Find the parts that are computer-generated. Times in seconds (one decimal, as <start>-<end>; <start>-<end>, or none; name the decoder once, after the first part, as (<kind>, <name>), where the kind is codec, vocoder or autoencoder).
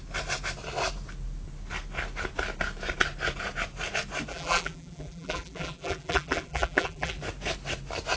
4.3-7.2 (vocoder, BigVGAN v2)